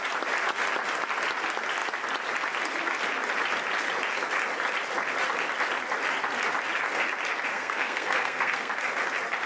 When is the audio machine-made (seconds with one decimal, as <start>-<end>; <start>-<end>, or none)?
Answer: 7.5-8.7